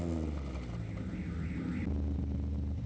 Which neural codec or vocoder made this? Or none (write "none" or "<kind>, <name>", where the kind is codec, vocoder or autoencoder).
none